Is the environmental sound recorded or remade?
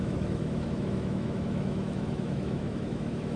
remade